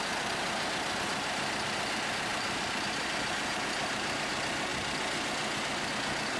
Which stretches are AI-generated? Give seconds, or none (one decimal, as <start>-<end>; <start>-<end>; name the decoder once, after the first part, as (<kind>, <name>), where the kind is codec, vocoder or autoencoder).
none

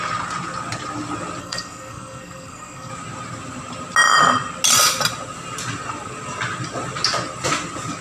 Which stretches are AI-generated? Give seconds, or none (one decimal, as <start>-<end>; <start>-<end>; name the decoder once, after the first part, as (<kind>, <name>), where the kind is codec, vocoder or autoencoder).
1.4-2.9 (codec, SNAC)